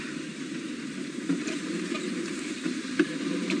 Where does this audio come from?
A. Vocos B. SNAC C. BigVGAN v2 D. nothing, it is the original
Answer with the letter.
C